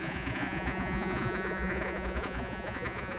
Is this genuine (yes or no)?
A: no